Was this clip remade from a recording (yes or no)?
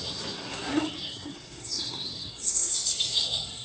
yes